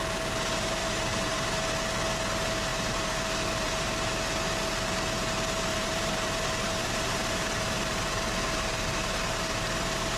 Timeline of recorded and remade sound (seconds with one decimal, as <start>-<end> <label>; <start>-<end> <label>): 0.0-0.8 recorded; 0.8-1.7 remade; 1.7-2.7 recorded; 2.7-4.1 remade; 4.1-5.7 recorded; 5.7-10.2 remade